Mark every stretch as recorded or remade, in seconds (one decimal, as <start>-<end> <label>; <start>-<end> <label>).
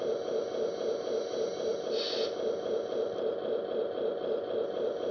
0.0-1.7 recorded; 1.7-5.1 remade